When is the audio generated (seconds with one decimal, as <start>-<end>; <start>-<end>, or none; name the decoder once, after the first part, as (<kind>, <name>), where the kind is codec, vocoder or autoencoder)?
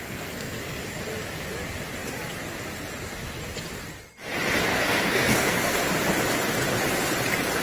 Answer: 0.0-0.8 (codec, SNAC); 4.7-5.8